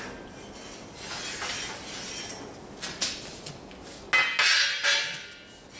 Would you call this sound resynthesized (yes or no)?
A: no